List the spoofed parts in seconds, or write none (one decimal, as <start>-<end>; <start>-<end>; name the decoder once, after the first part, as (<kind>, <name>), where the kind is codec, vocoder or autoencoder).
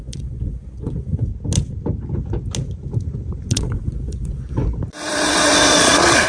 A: 0.0-1.3 (vocoder, Vocos); 3.5-4.6; 5.1-6.3